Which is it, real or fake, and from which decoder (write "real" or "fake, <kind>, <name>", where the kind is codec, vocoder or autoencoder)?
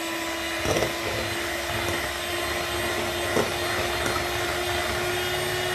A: real